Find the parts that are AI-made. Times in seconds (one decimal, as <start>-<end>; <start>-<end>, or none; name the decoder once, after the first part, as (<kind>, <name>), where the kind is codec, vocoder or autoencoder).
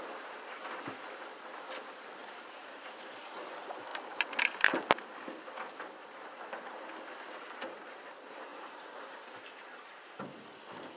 2.2-3.1 (vocoder, BigVGAN v2); 3.9-4.7; 8.5-10.0